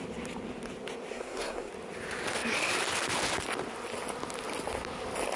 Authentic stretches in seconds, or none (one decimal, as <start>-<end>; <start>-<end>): 0.0-1.1; 1.7-5.4